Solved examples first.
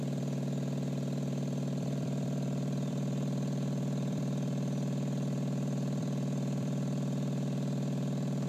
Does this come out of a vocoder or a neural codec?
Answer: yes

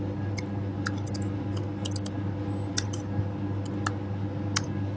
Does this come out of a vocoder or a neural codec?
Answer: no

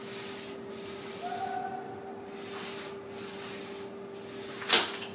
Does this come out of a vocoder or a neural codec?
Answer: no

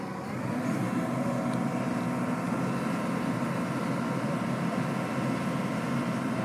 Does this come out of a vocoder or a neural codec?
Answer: no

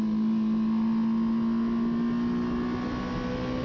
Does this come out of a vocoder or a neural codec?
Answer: no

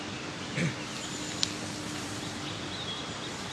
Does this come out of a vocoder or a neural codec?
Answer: yes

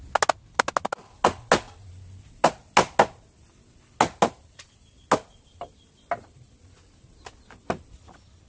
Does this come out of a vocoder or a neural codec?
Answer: no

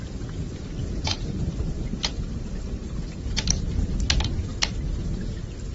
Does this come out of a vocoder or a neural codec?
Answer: no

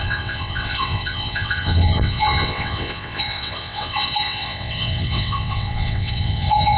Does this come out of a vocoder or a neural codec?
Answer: yes